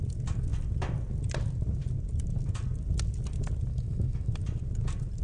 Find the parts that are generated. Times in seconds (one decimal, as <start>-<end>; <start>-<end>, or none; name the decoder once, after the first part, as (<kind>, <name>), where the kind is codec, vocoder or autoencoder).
3.7-4.3 (autoencoder, DAC-VAE)